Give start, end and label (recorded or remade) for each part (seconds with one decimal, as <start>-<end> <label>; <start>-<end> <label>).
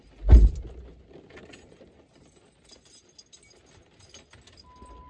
0.0-5.1 recorded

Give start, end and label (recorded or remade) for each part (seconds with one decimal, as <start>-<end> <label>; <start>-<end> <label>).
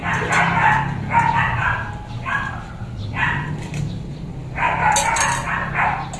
0.0-6.2 recorded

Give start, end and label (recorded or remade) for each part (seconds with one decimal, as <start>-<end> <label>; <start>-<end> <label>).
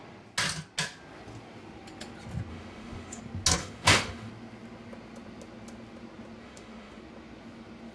0.0-2.5 recorded; 2.5-3.2 remade; 3.2-3.6 recorded; 3.6-4.3 remade; 4.3-6.4 recorded; 6.4-7.0 remade; 7.0-7.9 recorded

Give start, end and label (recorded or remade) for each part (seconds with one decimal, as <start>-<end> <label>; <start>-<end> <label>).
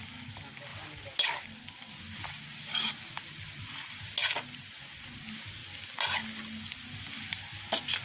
0.0-8.0 recorded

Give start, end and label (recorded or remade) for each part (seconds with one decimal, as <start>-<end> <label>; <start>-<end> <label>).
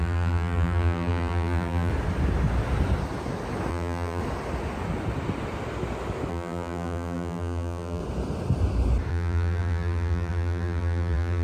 0.0-1.9 remade; 1.9-3.7 recorded; 3.7-4.2 remade; 4.2-6.3 recorded; 6.3-8.0 remade; 8.0-9.1 recorded; 9.1-11.4 remade